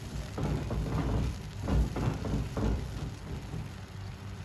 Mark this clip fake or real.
fake